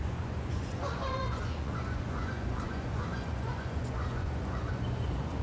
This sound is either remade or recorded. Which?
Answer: remade